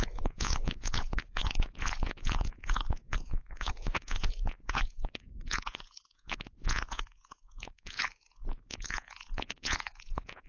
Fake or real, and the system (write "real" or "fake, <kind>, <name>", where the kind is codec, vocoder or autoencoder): fake, vocoder, Vocos